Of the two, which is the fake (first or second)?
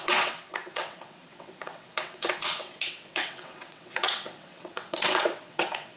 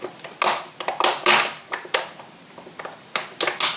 first